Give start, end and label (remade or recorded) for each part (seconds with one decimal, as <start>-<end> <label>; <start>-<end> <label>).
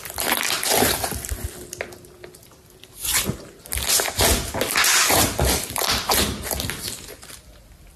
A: 0.0-8.0 recorded